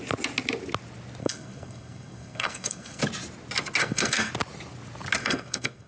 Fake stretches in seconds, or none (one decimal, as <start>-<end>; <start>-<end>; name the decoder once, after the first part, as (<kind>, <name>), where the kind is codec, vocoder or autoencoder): 1.2-3.0 (codec, SNAC); 3.8-4.3; 5.2-5.9